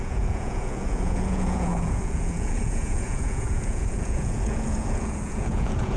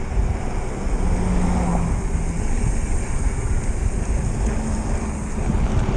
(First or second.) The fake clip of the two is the first